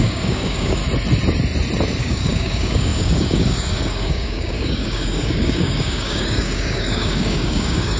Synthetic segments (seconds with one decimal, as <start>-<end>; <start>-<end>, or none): 0.0-0.8; 2.0-8.0